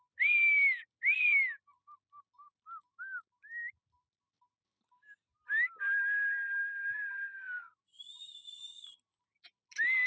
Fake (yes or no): no